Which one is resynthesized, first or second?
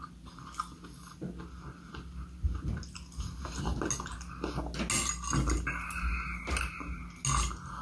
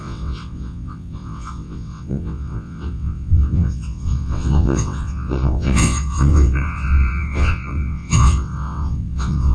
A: second